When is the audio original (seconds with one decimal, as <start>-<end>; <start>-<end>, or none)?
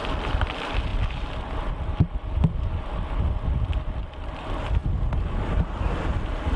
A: 0.0-6.6